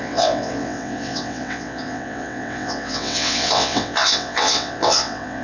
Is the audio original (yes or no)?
no